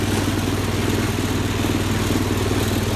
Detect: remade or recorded recorded